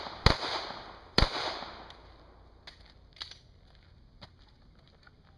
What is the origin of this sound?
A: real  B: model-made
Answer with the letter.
A